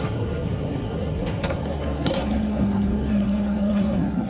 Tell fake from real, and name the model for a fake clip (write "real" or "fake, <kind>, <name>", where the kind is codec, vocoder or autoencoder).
fake, codec, SNAC